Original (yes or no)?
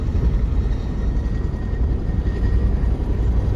no